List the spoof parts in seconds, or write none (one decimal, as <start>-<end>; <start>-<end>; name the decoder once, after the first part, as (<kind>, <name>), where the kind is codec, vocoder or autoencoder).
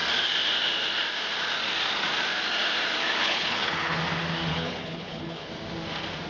3.2-4.0 (codec, HILCodec); 4.5-5.5